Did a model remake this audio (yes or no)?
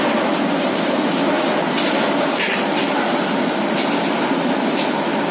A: no